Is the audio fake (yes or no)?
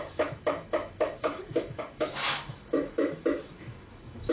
yes